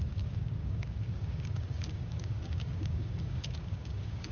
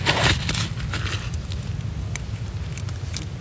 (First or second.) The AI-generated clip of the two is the first